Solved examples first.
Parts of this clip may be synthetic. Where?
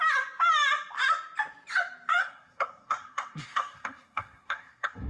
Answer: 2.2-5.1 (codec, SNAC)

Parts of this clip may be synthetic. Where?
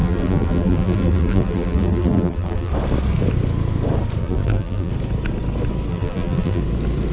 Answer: 0.0-2.7 (vocoder, BigVGAN v2); 4.2-4.9; 5.9-6.6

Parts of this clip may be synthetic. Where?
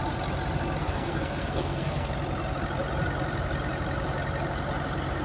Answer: 0.8-2.1 (codec, SNAC)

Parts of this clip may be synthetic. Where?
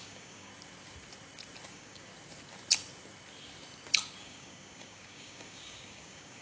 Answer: 0.0-0.5 (codec, DAC); 1.7-2.1; 4.2-6.4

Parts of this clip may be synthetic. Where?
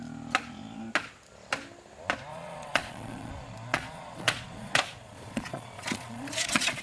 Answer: 2.3-3.3 (vocoder, Vocos); 3.7-6.8